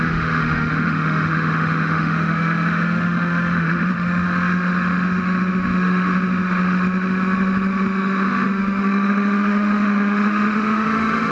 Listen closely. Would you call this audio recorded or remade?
remade